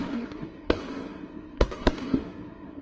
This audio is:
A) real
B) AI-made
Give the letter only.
B